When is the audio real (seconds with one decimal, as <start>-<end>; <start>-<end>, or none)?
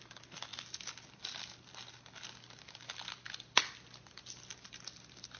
0.0-5.4